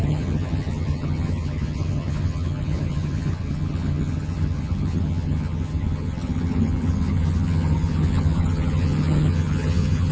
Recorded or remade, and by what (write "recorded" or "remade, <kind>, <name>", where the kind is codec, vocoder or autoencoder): remade, vocoder, HiFi-GAN